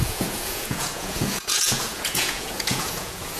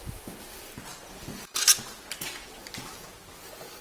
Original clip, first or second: second